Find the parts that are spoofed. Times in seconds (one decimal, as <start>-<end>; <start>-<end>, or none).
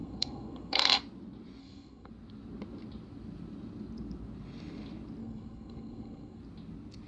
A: 0.0-1.0; 1.6-2.1; 5.2-6.4